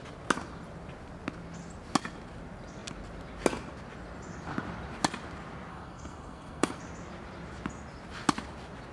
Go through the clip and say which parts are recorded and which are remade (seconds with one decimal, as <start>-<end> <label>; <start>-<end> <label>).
0.0-5.7 recorded; 5.7-6.8 remade; 6.8-8.9 recorded